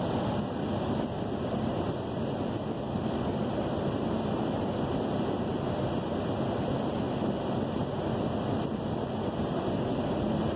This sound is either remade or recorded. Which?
recorded